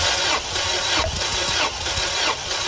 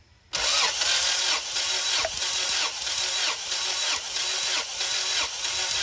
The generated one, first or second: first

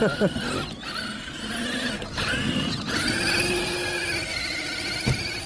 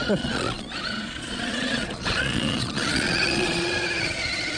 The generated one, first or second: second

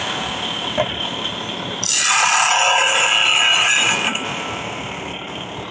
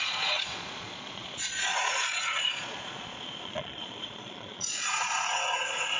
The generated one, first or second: second